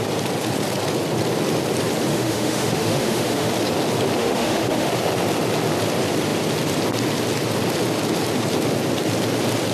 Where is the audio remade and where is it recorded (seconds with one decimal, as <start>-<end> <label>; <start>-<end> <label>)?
0.0-2.1 recorded; 2.1-3.5 remade; 3.5-4.2 recorded; 4.2-4.9 remade; 4.9-9.7 recorded